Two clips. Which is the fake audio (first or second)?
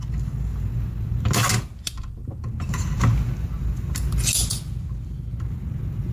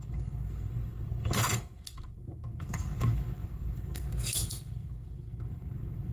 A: second